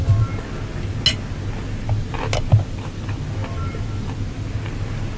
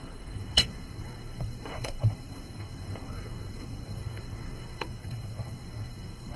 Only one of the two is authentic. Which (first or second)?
first